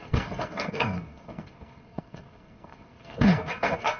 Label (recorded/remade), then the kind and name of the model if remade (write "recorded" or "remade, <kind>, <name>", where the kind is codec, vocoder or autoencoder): remade, codec, SNAC